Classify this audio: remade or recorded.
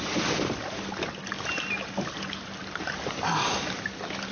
recorded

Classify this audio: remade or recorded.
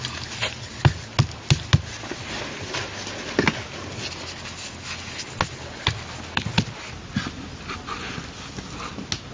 recorded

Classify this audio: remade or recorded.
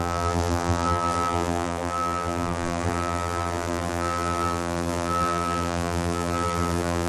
remade